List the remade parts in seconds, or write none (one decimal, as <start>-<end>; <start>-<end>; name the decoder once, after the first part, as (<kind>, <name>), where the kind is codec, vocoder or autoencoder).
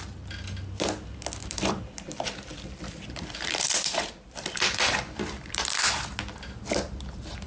1.4-5.9 (vocoder, BigVGAN v2)